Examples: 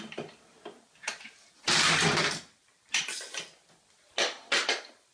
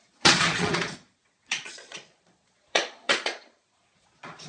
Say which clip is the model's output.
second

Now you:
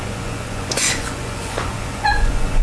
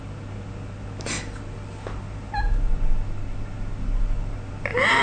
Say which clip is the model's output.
first